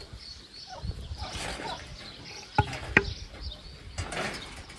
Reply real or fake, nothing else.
fake